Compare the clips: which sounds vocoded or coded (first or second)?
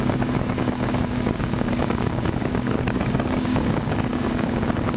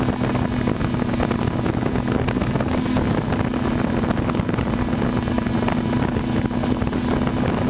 first